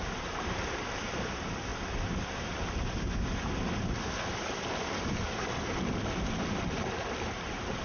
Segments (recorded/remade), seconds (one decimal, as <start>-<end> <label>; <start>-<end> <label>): 0.0-7.8 recorded